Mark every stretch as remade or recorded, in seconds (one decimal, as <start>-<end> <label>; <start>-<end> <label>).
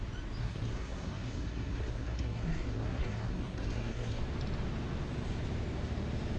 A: 0.0-0.4 recorded; 0.4-4.2 remade; 4.2-6.4 recorded